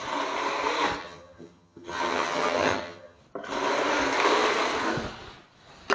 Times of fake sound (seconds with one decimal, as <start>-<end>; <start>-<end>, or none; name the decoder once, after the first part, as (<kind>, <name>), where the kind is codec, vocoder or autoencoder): 1.0-3.2 (vocoder, HiFi-GAN)